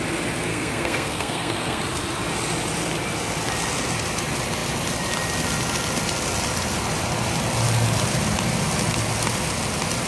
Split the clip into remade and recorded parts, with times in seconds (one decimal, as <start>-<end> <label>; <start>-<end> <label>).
0.0-0.5 recorded; 0.5-1.8 remade; 1.8-10.1 recorded